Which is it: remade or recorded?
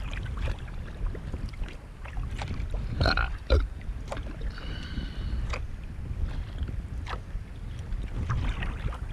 recorded